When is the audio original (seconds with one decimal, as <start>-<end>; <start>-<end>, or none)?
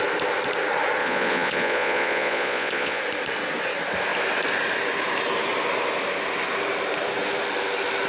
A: 0.0-1.0; 3.0-8.1